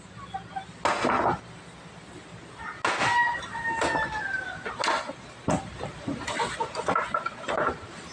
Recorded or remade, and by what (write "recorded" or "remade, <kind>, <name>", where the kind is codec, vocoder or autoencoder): recorded